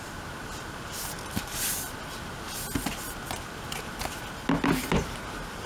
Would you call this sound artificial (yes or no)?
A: no